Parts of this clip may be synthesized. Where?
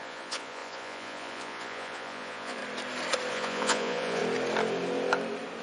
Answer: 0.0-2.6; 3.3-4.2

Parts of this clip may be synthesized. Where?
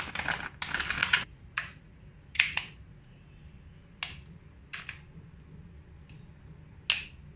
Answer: 1.0-3.4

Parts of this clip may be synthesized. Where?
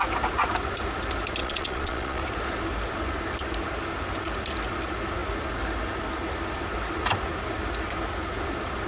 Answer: 1.4-2.2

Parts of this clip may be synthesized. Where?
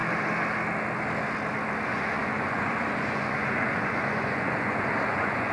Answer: 1.9-5.5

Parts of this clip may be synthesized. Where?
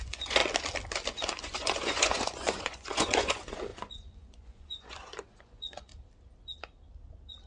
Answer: 0.0-0.4; 1.4-5.9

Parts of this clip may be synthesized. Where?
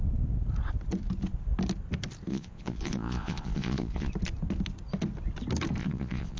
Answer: 2.3-4.1; 5.8-6.4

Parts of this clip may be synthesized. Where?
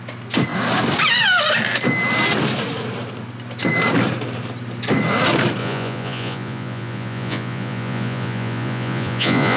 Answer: 5.6-9.6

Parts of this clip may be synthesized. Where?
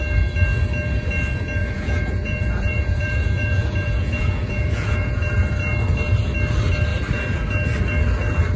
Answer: 1.6-5.2